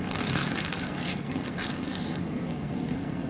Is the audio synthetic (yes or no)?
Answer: yes